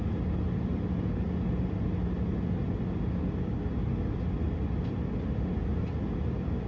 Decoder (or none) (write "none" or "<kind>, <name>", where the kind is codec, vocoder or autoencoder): none